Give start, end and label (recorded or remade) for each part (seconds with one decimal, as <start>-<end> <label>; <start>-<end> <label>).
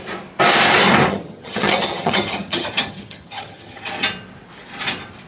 0.0-1.1 recorded; 1.1-3.8 remade; 3.8-5.3 recorded